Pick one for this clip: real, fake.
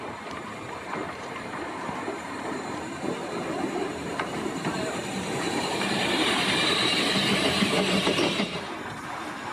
fake